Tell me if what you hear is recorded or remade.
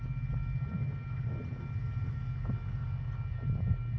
recorded